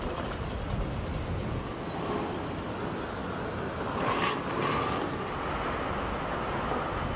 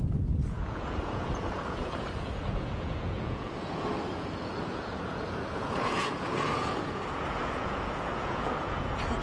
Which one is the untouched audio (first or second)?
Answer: first